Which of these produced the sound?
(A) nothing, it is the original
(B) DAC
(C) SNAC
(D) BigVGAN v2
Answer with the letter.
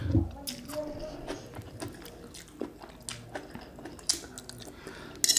A